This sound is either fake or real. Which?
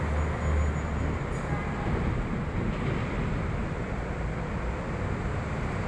real